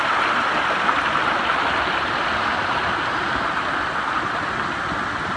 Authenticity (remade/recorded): recorded